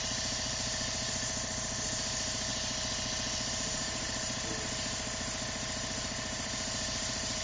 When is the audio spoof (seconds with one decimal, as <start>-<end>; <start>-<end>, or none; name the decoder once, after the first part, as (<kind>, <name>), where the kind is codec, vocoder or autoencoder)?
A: 0.0-2.5 (vocoder, BigVGAN v2); 3.5-7.4